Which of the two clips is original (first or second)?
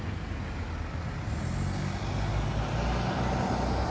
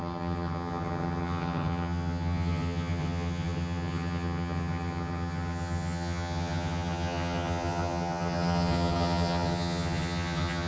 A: first